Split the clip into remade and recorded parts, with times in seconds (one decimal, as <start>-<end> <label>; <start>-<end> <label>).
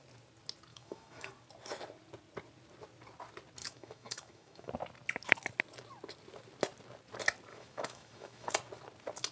0.0-0.7 recorded; 0.7-1.3 remade; 1.3-3.6 recorded; 3.6-4.7 remade; 4.7-7.5 recorded; 7.5-8.5 remade; 8.5-9.3 recorded